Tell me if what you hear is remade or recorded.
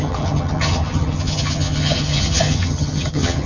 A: remade